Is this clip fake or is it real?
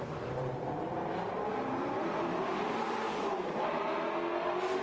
real